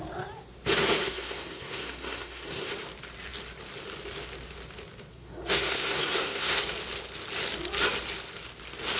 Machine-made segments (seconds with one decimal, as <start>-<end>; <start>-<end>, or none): 1.0-2.7; 5.1-6.6